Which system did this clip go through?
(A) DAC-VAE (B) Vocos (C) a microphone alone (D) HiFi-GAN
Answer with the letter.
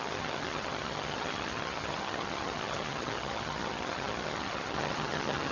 D